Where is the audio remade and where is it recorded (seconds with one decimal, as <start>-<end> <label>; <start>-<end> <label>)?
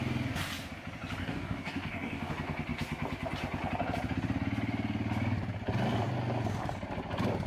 0.0-1.2 recorded; 1.2-2.3 remade; 2.3-7.5 recorded